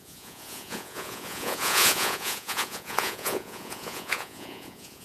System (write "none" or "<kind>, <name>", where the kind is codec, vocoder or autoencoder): vocoder, Vocos